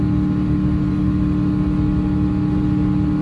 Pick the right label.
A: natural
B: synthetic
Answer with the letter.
A